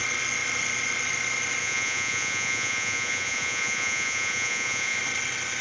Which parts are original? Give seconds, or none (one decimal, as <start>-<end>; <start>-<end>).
0.0-1.6; 5.0-5.6